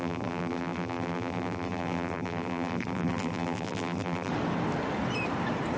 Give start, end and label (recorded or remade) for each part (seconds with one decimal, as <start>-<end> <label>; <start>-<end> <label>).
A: 0.0-4.3 remade; 4.3-5.8 recorded